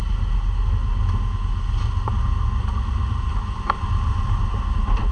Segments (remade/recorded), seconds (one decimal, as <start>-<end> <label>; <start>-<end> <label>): 0.0-3.1 recorded; 3.1-5.1 remade